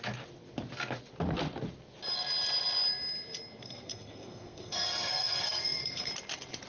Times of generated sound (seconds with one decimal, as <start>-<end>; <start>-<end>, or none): 3.6-6.1